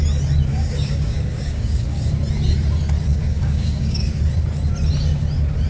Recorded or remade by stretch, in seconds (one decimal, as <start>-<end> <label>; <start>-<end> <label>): 0.0-0.5 recorded; 0.5-2.1 remade; 2.1-3.1 recorded; 3.1-4.1 remade; 4.1-5.7 recorded